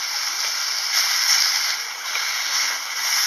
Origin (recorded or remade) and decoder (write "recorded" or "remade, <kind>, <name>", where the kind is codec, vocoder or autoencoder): recorded